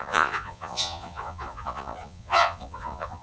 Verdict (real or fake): fake